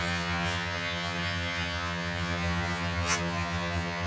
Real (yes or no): no